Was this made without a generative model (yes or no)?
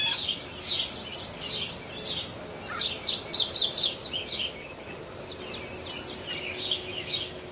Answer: yes